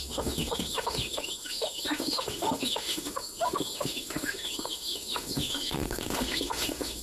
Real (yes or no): no